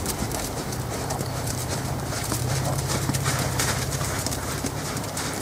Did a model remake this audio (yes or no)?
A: yes